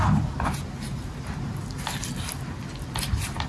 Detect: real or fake real